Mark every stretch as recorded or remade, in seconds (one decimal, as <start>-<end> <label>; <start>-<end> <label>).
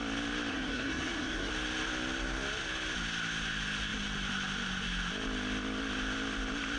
0.0-0.5 recorded; 0.5-1.5 remade; 1.5-6.8 recorded